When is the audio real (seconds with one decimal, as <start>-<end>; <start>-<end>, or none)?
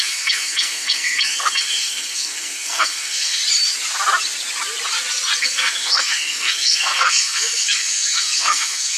3.4-5.4